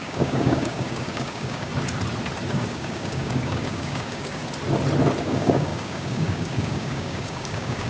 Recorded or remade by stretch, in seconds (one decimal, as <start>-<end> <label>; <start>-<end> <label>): 0.0-1.7 remade; 1.7-2.5 recorded; 2.5-4.4 remade; 4.4-5.2 recorded; 5.2-7.9 remade